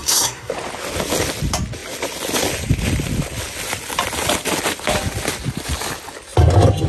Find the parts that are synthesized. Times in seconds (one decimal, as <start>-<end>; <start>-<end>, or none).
0.0-0.5